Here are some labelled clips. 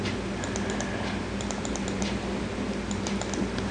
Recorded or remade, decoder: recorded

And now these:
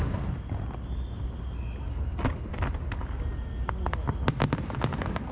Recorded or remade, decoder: recorded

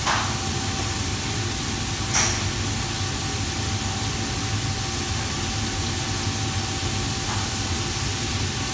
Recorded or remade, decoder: recorded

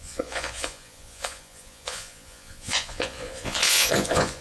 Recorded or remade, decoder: remade, vocoder, Vocos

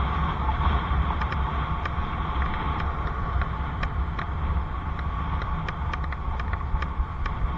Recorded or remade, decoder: recorded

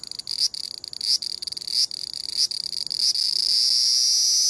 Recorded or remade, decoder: recorded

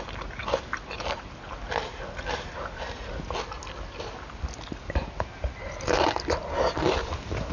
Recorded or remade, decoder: recorded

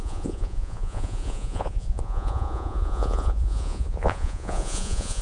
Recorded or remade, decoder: remade, vocoder, Vocos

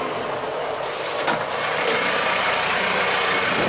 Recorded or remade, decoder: recorded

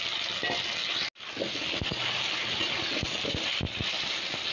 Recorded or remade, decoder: recorded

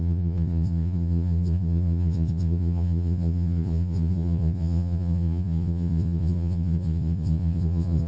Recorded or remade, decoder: remade, vocoder, Vocos